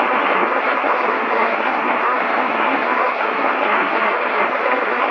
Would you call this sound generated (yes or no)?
yes